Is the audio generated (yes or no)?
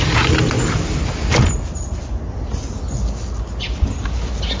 no